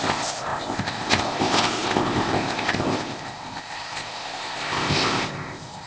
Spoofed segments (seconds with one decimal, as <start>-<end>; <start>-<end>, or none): 0.0-5.9